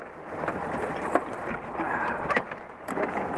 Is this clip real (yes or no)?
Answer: yes